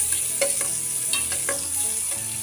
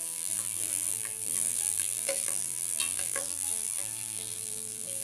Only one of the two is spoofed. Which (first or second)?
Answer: second